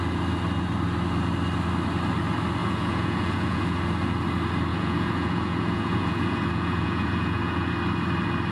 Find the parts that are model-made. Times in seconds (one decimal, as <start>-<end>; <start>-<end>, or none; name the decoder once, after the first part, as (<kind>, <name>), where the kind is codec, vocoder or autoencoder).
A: 2.6-3.8 (vocoder, Vocos); 4.7-7.7